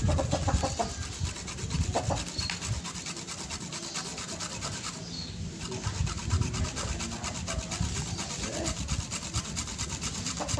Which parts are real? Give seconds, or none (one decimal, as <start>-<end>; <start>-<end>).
0.0-10.6